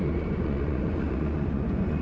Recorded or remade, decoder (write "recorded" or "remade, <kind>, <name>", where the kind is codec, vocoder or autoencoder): remade, vocoder, Vocos